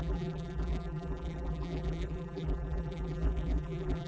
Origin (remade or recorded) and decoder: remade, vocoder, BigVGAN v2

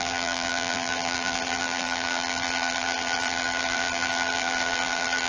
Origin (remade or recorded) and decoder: remade, vocoder, BigVGAN v2